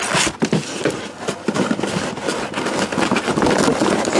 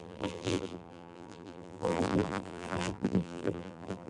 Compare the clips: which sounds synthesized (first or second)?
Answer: second